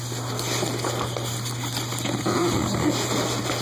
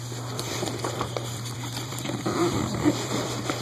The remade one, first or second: second